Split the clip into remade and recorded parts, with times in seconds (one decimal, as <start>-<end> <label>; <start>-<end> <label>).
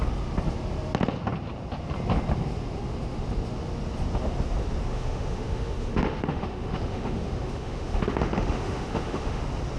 0.0-4.9 recorded; 4.9-9.4 remade; 9.4-9.8 recorded